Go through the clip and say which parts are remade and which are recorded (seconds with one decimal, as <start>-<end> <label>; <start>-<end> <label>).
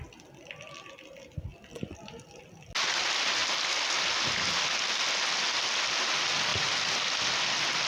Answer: 0.0-1.5 recorded; 1.5-2.4 remade; 2.4-7.9 recorded